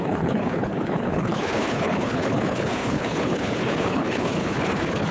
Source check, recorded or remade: remade